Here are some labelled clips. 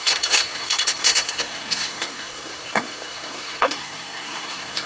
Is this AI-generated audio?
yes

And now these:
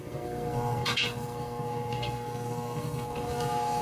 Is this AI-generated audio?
yes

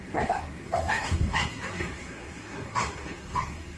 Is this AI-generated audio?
yes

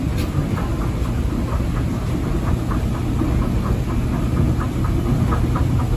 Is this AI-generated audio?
no